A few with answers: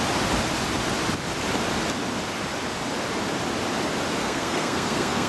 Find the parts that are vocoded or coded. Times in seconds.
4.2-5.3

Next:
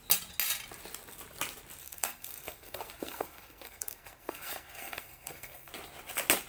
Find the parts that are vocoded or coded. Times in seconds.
1.8-5.7

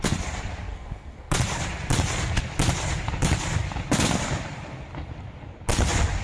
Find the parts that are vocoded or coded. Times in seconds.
0.7-1.3